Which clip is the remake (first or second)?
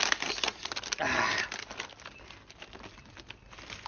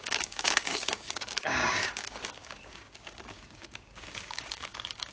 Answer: second